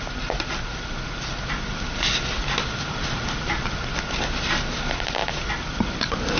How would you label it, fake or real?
real